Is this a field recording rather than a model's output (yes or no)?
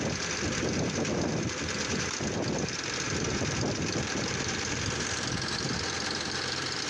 no